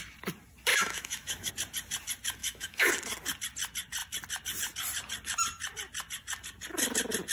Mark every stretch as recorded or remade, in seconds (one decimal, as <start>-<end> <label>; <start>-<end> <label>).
0.0-0.7 recorded; 0.7-1.5 remade; 1.5-2.4 recorded; 2.4-2.9 remade; 2.9-7.3 recorded